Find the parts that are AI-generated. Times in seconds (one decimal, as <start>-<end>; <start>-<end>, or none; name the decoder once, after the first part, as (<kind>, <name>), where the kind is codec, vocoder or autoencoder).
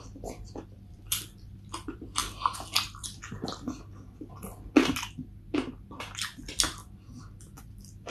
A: 0.0-2.2 (vocoder, BigVGAN v2); 6.0-6.8; 7.6-8.1